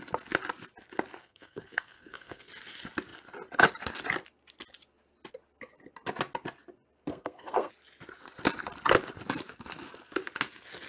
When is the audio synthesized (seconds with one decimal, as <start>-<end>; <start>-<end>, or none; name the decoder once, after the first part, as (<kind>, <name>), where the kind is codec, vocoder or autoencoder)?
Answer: 1.2-2.5 (codec, SNAC); 7.1-7.7